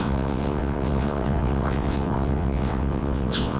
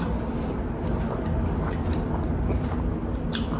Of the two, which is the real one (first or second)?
second